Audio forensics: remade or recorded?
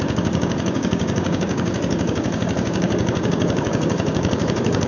remade